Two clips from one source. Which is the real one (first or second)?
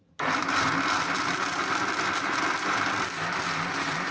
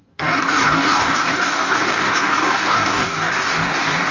first